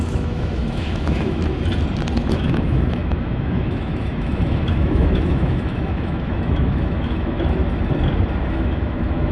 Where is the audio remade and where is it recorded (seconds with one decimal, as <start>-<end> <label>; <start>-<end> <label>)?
0.0-1.4 remade; 1.4-2.2 recorded; 2.2-7.6 remade; 7.6-8.5 recorded; 8.5-9.3 remade